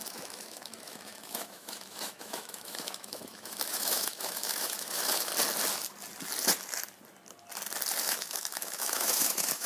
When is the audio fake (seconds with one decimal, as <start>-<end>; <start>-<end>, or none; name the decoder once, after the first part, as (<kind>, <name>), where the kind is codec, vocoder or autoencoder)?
0.0-5.3 (autoencoder, DAC-VAE); 8.0-9.7